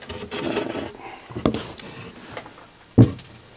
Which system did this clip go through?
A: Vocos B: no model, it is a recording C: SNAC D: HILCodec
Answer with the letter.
B